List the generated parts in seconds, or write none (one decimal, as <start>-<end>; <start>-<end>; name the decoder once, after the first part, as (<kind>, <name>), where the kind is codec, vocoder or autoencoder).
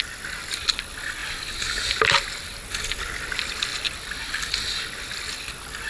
none